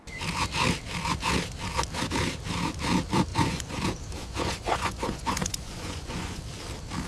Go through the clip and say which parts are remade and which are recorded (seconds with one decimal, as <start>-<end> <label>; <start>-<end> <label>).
0.0-3.3 recorded; 3.3-3.8 remade; 3.8-4.2 recorded; 4.2-6.4 remade; 6.4-7.1 recorded